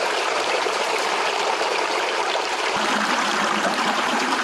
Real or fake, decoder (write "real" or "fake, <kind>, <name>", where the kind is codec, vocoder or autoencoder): fake, vocoder, BigVGAN v2